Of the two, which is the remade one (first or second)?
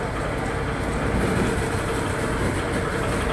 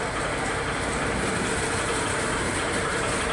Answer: second